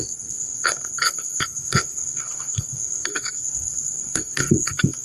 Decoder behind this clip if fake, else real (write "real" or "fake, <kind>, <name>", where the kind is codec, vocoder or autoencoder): fake, codec, SNAC